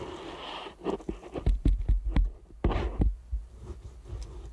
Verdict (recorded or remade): recorded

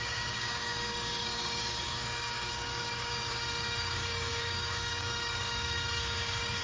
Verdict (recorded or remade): remade